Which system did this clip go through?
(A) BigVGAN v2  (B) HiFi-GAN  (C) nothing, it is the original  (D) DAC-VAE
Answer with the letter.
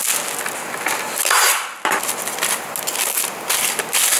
C